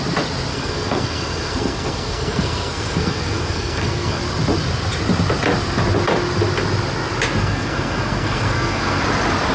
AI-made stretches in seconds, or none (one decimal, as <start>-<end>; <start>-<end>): 0.5-4.2; 7.4-9.0